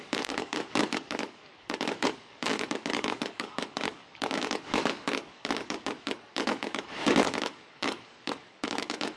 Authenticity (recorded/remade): remade